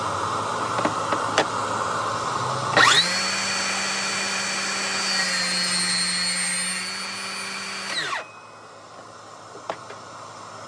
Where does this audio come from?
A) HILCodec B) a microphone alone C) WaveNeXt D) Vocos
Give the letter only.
B